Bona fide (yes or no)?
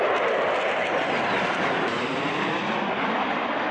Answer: yes